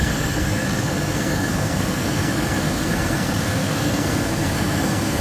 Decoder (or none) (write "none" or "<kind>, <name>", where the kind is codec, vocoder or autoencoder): codec, SNAC